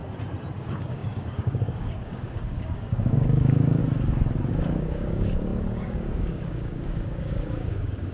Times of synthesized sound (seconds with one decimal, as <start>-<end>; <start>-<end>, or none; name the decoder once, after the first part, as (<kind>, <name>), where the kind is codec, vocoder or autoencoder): 0.6-3.8 (codec, DAC); 4.5-8.1